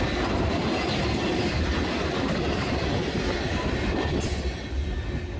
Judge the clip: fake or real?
real